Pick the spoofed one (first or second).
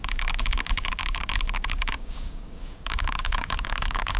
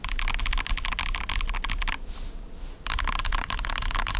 first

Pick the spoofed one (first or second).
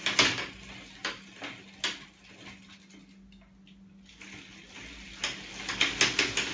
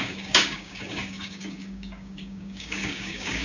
second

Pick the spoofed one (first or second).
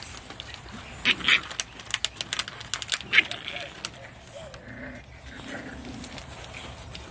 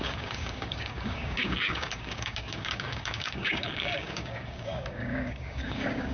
second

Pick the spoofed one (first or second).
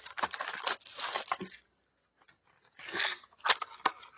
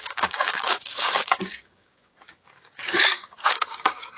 second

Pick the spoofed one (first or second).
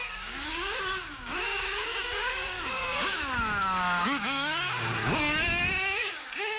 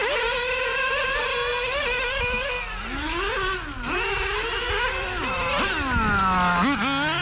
first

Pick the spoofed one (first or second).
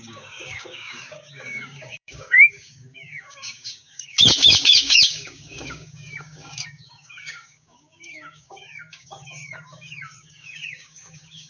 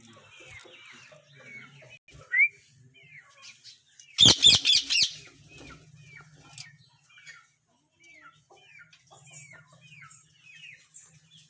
first